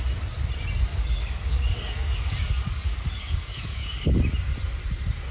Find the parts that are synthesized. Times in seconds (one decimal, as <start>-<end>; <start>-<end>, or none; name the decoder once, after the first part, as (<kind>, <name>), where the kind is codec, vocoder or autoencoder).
0.9-4.1 (codec, DAC)